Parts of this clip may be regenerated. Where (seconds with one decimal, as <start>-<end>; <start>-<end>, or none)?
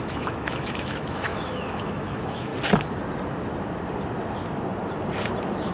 0.0-2.5